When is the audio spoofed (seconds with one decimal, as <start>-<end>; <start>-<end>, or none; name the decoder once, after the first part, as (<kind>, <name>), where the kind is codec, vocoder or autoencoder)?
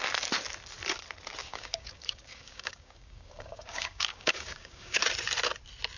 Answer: 1.4-5.0 (codec, DAC)